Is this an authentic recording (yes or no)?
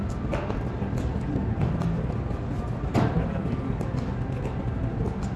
yes